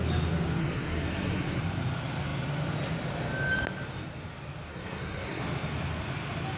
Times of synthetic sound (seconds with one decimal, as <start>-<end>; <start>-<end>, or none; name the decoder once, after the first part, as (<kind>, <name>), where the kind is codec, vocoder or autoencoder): 0.6-1.6 (codec, SNAC); 4.7-5.4